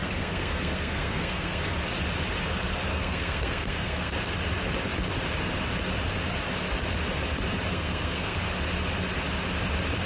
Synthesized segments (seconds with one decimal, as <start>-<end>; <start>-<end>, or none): 0.0-1.7; 2.9-4.1; 7.7-8.4